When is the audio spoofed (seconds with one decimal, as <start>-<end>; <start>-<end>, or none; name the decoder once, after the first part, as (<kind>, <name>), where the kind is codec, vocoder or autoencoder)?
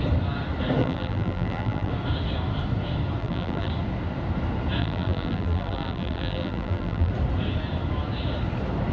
0.8-1.9 (vocoder, BigVGAN v2); 3.2-3.7; 4.8-7.1